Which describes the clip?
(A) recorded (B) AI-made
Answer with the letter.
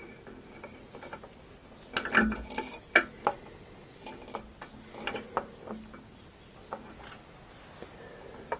A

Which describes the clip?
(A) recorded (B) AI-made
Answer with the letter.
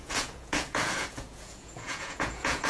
B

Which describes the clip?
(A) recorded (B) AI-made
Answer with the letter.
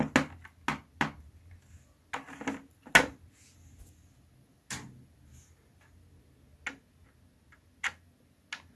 A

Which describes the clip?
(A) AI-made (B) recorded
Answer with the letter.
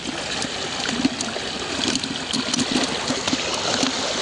B